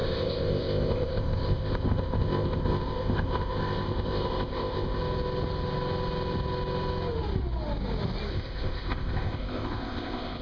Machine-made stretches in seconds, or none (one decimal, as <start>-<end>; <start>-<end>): 0.0-5.0; 8.3-10.4